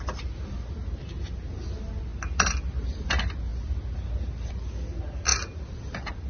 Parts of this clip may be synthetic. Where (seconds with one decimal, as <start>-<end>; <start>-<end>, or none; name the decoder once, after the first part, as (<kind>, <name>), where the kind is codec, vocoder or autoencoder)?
none